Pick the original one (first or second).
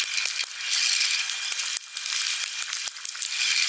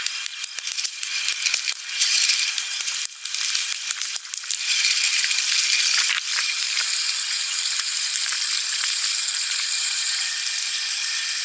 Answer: first